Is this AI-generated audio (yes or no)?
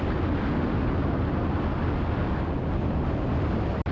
no